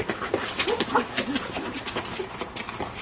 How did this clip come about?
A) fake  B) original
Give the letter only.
B